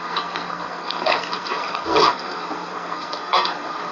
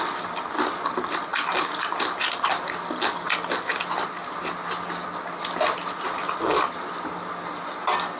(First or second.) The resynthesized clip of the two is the first